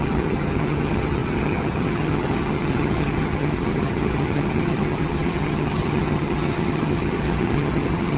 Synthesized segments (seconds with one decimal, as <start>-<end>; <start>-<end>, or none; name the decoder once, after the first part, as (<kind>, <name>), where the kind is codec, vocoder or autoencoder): 0.0-8.2 (vocoder, HiFi-GAN)